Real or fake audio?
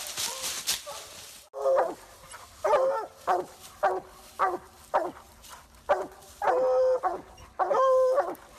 real